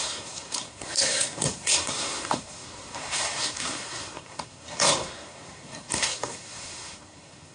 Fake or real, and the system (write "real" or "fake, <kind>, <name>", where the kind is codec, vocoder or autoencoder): fake, codec, SNAC